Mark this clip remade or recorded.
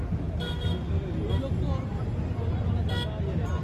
recorded